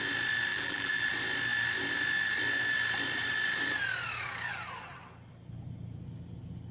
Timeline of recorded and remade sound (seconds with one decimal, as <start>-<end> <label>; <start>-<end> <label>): 0.0-0.5 recorded; 0.5-1.1 remade; 1.1-6.7 recorded